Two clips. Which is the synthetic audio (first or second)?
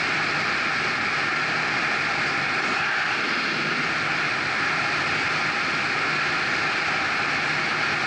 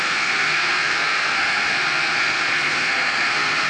second